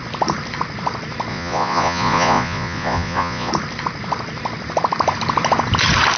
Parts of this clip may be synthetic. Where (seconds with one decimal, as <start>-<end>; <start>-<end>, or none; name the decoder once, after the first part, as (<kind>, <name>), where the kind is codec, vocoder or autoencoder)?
1.3-3.5 (vocoder, Vocos)